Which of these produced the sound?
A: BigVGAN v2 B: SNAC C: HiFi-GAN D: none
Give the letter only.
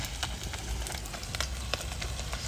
D